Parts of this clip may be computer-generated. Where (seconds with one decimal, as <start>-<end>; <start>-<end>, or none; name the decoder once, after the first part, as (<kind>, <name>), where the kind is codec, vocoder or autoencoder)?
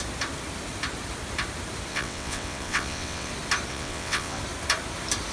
1.9-3.3 (vocoder, WaveNeXt); 3.7-4.4